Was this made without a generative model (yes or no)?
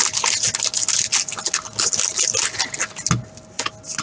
yes